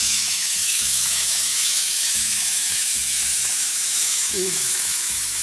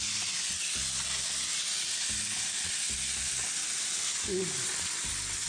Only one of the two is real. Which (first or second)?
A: second